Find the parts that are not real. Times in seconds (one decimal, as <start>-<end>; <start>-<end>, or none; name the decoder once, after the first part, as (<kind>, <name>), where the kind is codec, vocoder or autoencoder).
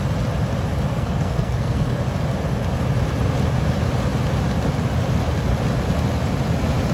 0.9-2.0 (codec, SNAC)